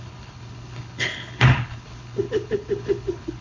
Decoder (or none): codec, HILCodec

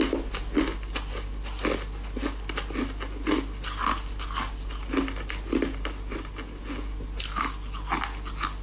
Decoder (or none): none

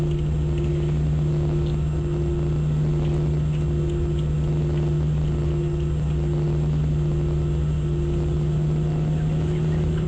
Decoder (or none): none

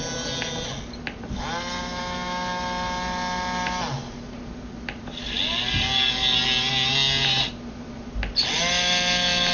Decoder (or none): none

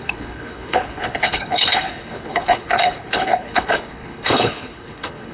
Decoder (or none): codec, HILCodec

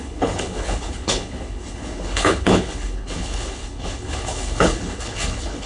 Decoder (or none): codec, HILCodec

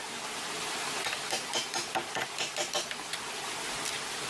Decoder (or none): none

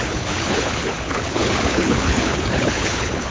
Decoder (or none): codec, HILCodec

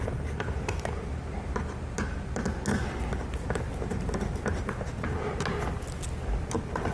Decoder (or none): none